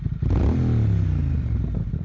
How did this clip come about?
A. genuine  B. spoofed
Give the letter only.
A